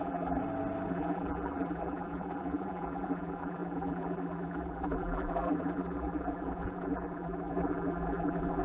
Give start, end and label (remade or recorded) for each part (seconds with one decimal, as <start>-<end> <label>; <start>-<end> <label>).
0.0-0.4 remade; 0.4-0.9 recorded; 0.9-8.6 remade